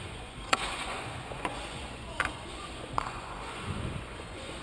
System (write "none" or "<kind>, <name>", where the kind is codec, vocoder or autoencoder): vocoder, Vocos